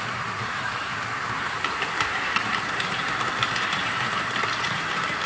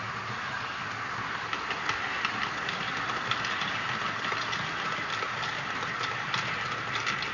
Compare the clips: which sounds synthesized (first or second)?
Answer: first